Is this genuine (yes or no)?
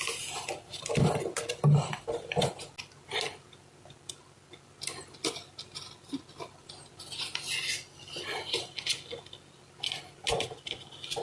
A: yes